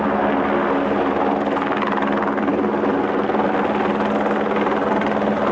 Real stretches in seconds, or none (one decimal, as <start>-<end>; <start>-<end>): 0.0-5.5